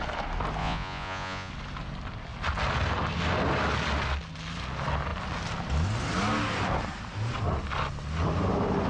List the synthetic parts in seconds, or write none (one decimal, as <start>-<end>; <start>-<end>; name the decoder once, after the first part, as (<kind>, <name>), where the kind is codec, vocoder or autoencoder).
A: 0.6-1.5 (vocoder, Vocos)